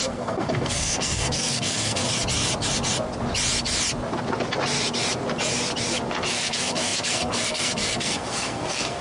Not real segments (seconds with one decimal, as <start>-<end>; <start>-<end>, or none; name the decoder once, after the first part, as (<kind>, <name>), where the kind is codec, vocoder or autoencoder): 0.0-2.0 (codec, SNAC); 6.1-9.0